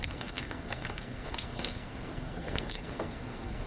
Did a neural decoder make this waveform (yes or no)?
yes